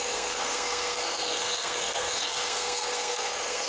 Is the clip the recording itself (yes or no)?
no